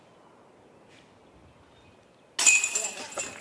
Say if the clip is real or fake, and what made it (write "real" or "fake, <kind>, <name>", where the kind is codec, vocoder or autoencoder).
real